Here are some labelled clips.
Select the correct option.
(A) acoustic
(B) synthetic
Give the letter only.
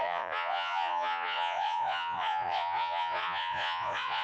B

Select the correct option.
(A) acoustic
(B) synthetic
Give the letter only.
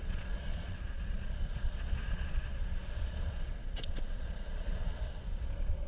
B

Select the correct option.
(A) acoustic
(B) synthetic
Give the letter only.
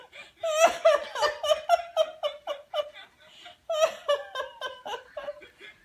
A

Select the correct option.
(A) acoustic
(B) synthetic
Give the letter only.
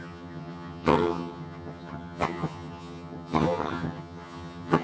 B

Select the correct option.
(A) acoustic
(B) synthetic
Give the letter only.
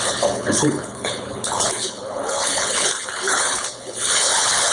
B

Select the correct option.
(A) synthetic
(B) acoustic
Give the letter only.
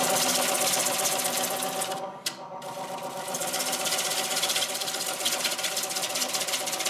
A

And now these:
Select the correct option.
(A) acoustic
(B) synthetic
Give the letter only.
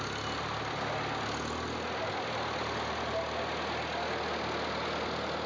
A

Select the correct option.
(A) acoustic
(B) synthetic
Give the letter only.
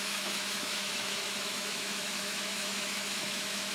B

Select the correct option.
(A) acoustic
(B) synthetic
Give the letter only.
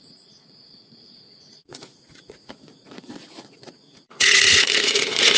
B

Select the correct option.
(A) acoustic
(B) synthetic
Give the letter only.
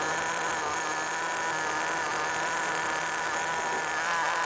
A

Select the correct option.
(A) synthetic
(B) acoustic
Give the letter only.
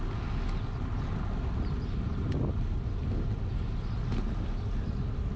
B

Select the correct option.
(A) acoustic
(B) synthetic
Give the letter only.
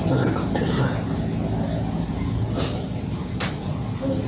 A